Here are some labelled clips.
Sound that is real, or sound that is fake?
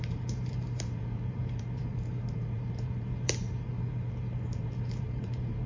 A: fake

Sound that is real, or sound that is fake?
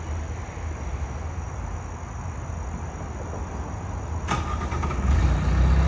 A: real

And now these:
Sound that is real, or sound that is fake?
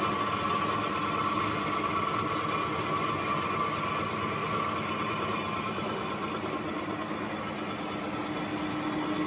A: real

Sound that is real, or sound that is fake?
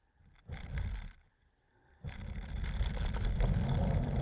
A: fake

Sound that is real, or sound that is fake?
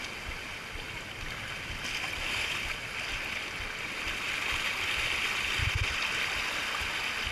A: real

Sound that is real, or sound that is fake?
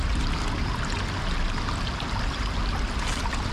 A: real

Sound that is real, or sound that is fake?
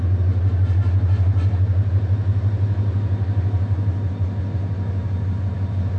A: real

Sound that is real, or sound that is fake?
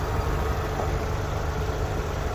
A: real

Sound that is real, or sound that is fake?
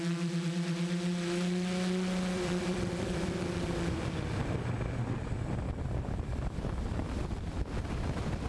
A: fake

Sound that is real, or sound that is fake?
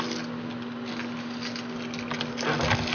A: real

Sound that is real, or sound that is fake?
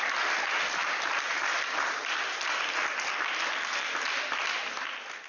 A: real